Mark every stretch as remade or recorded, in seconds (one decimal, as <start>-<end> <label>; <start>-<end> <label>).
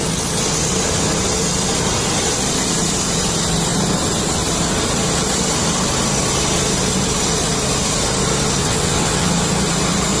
0.0-8.6 recorded; 8.6-9.3 remade; 9.3-10.2 recorded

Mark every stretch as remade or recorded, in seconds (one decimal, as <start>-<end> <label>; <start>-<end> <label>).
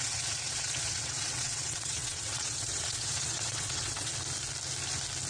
0.0-4.1 remade; 4.1-5.3 recorded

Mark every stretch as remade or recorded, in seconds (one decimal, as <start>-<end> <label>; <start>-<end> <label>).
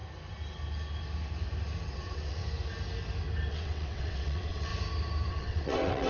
0.0-1.9 recorded; 1.9-2.4 remade; 2.4-3.5 recorded; 3.5-4.7 remade; 4.7-5.3 recorded; 5.3-6.1 remade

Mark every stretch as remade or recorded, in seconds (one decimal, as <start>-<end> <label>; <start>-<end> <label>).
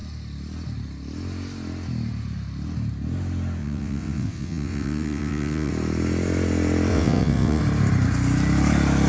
0.0-3.6 recorded; 3.6-5.7 remade; 5.7-6.9 recorded; 6.9-7.6 remade; 7.6-9.1 recorded